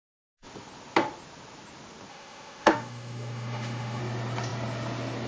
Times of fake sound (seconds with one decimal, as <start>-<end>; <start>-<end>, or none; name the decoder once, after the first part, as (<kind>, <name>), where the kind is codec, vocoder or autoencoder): 2.1-4.0 (autoencoder, DAC-VAE)